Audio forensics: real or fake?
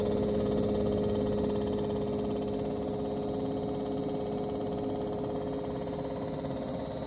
real